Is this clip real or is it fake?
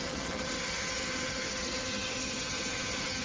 fake